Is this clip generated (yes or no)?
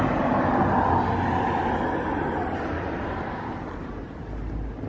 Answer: no